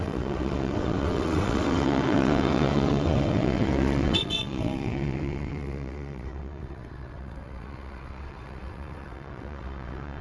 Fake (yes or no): yes